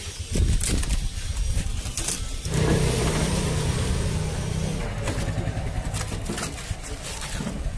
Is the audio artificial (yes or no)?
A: no